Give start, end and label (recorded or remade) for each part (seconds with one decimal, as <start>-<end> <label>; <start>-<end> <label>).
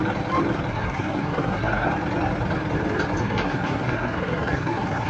0.0-0.7 recorded; 0.7-1.9 remade; 1.9-3.2 recorded; 3.2-5.1 remade